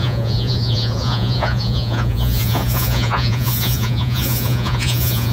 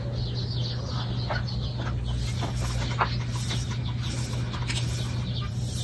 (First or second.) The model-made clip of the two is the first